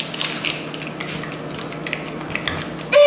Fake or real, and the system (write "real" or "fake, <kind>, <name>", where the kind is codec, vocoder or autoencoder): real